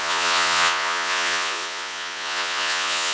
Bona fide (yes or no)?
no